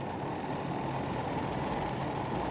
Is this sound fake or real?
real